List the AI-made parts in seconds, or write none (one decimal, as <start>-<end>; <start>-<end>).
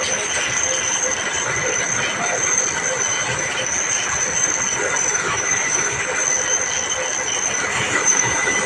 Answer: 3.1-3.6; 5.1-6.0; 7.7-8.7